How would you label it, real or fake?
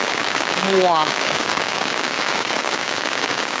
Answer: fake